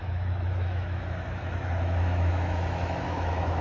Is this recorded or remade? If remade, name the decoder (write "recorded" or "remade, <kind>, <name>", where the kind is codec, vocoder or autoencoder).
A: remade, autoencoder, DAC-VAE